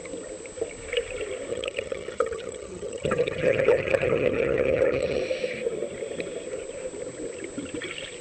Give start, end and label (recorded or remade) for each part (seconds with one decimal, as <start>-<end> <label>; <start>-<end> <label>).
0.0-1.5 recorded; 1.5-5.2 remade; 5.2-8.2 recorded